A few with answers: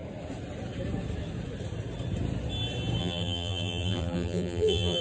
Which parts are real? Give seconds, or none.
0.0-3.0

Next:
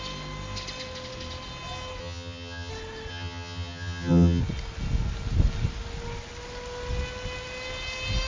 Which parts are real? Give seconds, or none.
0.0-2.0; 2.7-3.1; 4.4-8.3